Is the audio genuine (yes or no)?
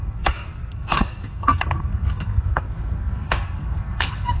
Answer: no